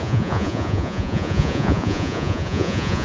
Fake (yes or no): yes